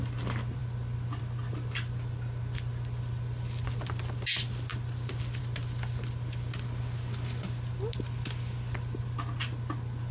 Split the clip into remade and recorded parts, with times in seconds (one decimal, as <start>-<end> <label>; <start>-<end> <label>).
0.0-10.1 recorded

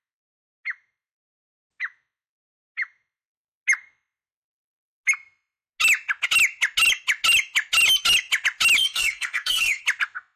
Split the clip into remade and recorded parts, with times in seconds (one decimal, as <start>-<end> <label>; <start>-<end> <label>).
0.0-8.8 recorded; 8.8-9.8 remade; 9.8-10.4 recorded